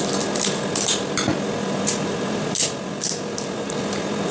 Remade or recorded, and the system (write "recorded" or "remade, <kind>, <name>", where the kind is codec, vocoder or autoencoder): recorded